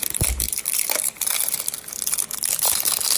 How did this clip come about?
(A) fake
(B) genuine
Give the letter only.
B